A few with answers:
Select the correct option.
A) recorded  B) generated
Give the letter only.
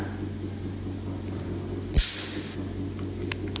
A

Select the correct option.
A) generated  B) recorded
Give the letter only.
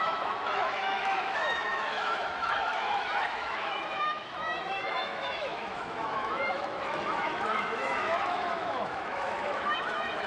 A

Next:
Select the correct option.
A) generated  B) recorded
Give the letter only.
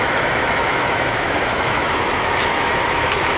A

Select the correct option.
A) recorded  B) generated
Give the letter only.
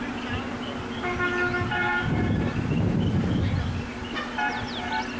A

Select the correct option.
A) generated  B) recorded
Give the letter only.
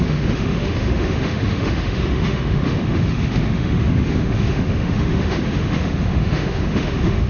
A